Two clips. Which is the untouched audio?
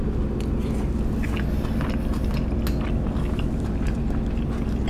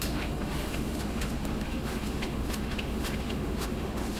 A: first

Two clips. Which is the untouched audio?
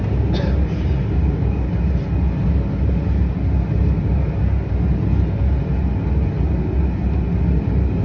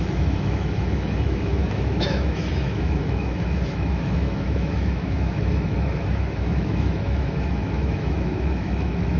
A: first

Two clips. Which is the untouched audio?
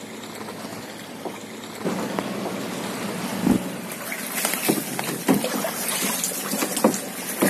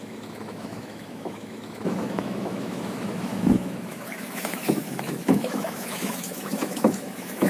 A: first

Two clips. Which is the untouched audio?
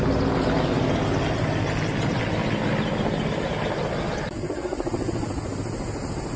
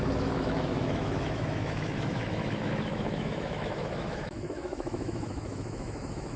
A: first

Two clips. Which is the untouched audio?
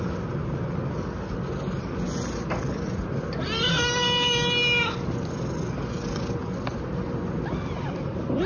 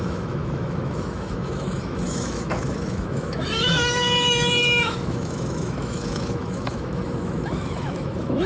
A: first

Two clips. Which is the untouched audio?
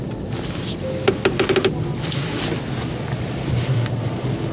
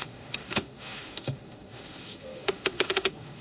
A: first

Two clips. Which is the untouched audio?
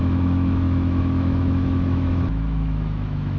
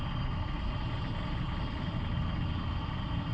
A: second